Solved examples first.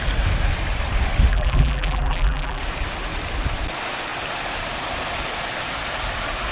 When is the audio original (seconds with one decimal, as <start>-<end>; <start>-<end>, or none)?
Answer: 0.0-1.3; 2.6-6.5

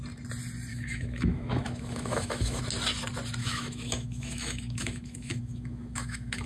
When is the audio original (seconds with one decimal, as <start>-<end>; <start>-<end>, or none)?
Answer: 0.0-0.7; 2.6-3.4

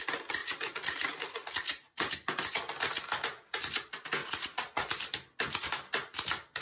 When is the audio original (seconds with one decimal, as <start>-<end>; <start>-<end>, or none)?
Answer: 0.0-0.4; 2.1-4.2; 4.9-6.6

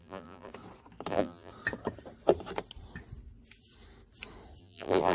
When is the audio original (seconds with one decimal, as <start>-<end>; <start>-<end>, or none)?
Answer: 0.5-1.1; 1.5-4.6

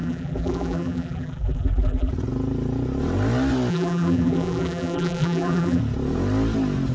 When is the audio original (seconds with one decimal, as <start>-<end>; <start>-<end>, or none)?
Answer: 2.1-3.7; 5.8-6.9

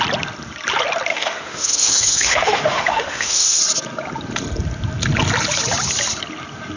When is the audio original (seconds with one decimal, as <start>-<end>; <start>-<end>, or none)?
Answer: 0.0-1.1; 3.6-6.8

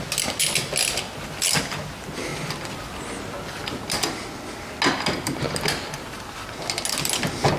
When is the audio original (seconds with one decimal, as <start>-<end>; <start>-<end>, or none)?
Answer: 0.0-7.6